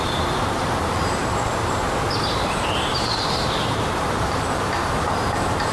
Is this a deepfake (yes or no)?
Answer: yes